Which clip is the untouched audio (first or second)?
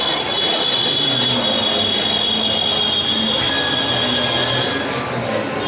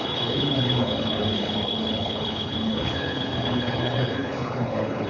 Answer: first